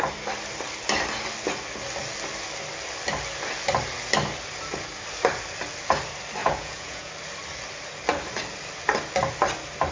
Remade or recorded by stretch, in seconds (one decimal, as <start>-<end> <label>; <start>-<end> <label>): 0.0-6.4 recorded; 6.4-7.1 remade; 7.1-9.9 recorded